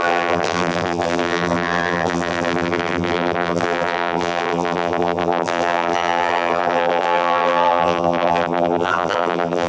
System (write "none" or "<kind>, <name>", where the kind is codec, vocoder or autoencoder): vocoder, BigVGAN v2